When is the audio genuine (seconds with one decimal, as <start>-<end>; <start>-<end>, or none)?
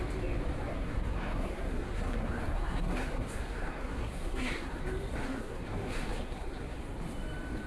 0.0-0.7; 4.8-5.2; 6.8-7.7